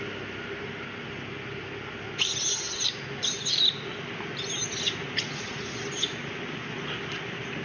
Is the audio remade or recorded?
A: recorded